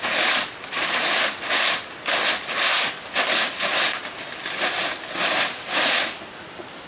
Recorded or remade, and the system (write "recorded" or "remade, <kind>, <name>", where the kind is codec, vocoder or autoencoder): recorded